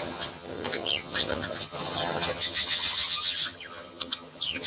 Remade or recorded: remade